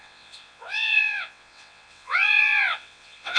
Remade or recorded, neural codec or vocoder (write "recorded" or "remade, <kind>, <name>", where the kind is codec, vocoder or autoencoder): remade, vocoder, WaveNeXt